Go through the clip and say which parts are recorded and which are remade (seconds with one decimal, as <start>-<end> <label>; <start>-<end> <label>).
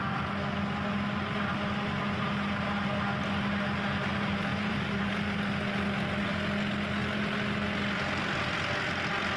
0.0-4.5 recorded; 4.5-5.1 remade; 5.1-9.4 recorded